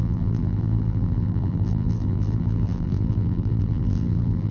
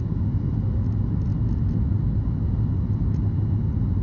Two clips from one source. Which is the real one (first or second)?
second